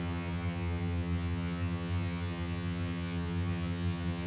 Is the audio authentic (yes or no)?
no